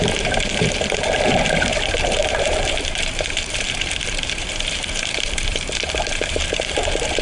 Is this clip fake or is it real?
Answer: fake